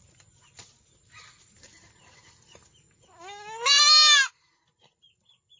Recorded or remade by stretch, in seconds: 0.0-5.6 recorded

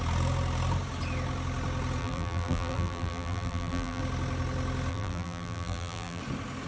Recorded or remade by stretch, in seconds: 0.0-2.0 recorded; 2.0-4.0 remade; 4.0-4.9 recorded; 4.9-6.2 remade; 6.2-6.7 recorded

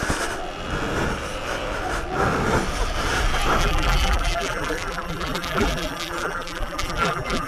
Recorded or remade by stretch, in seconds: 0.0-3.6 recorded; 3.6-7.5 remade

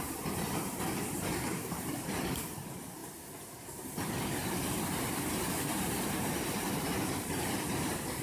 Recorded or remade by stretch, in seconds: 0.0-3.0 remade; 3.0-4.8 recorded; 4.8-8.2 remade

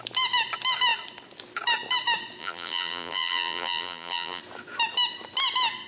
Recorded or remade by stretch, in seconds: 0.0-2.4 recorded; 2.4-4.4 remade; 4.4-5.9 recorded

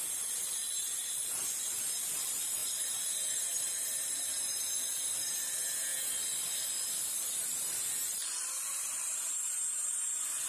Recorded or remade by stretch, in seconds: 0.0-5.9 remade; 5.9-8.5 recorded; 8.5-10.5 remade

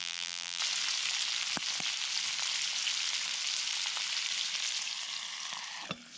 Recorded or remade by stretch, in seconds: 0.0-0.6 remade; 0.6-6.2 recorded

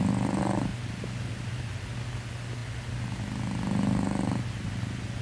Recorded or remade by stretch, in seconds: 0.0-5.2 recorded